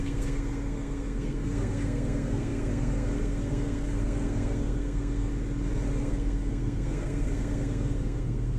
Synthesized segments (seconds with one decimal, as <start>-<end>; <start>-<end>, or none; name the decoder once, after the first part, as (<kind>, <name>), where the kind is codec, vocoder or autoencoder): 0.0-5.3 (codec, SNAC); 6.0-8.6